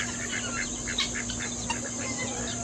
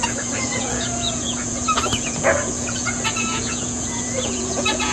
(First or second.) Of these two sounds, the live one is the first